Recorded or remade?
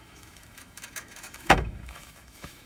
remade